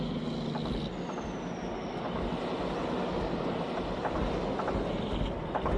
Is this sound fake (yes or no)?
no